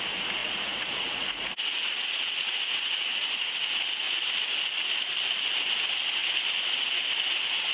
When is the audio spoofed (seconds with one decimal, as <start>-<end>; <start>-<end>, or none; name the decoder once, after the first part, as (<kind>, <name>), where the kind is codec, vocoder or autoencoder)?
0.4-3.5 (vocoder, Vocos)